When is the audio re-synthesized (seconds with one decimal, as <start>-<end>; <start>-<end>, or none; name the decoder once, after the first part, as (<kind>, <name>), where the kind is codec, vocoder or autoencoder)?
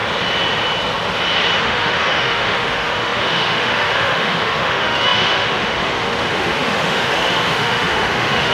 1.6-8.5 (autoencoder, DAC-VAE)